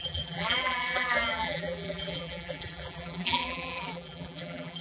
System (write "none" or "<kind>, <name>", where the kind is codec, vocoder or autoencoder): vocoder, BigVGAN v2